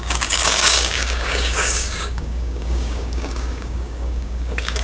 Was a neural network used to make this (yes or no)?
yes